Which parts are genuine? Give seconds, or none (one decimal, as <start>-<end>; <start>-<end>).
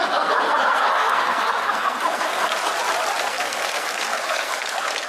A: 2.5-3.2